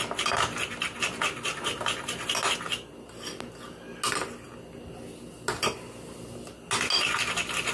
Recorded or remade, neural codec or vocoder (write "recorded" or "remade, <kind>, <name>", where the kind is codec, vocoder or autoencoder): recorded